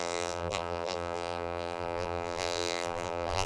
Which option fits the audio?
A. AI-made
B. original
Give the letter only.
A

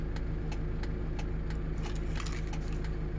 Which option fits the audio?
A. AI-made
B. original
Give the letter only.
B